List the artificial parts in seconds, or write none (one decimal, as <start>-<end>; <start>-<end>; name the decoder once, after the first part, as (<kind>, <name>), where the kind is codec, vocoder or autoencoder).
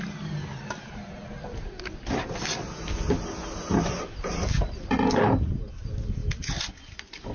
none